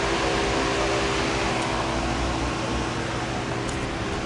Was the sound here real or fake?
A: real